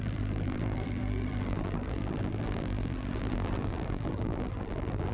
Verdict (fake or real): fake